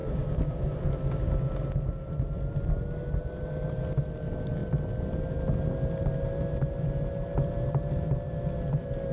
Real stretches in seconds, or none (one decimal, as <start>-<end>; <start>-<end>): 1.3-9.1